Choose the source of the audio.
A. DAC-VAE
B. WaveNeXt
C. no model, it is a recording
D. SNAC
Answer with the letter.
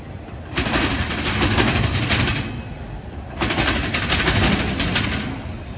C